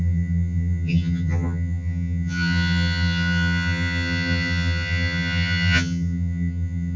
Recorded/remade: remade